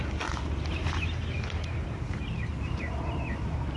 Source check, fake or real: fake